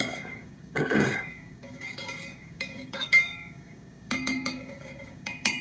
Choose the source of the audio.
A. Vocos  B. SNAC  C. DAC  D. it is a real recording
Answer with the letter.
C